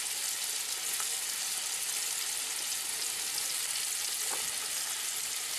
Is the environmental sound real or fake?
real